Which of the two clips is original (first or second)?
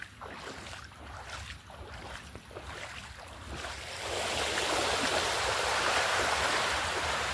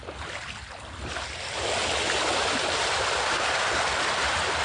first